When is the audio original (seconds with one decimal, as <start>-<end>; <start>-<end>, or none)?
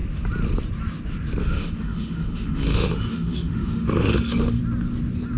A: 0.0-1.4; 4.6-5.4